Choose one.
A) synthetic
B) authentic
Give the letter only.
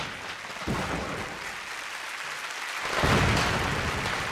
B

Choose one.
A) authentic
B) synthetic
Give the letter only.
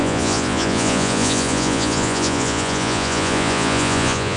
B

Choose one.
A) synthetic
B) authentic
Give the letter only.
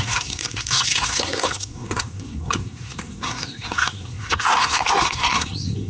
A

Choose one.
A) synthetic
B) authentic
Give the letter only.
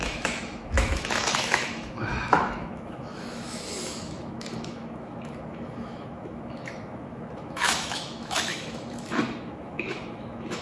A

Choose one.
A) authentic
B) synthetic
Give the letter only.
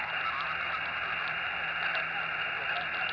A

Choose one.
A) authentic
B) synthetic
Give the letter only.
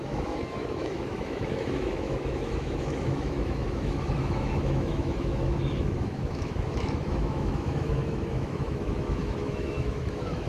B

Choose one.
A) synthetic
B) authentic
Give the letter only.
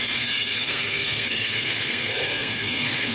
A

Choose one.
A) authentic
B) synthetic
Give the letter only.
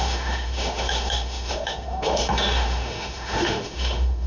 B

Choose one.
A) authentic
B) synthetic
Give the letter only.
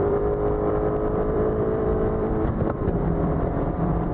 B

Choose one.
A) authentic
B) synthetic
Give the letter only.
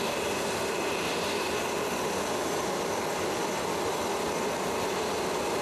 A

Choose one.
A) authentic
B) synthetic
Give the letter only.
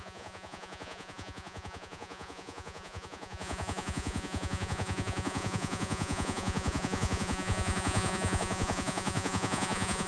B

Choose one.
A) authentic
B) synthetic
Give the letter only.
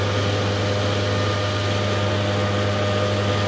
A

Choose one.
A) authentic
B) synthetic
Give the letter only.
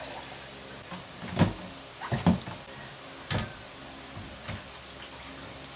A